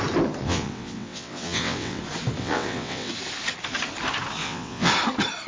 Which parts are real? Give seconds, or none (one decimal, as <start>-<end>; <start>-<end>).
0.0-0.4; 2.0-2.4; 3.1-4.4; 4.9-5.5